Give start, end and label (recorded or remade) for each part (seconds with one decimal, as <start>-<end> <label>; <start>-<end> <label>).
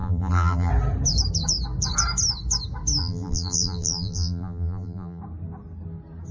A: 0.0-0.7 remade; 0.7-3.0 recorded; 3.0-5.2 remade; 5.2-6.3 recorded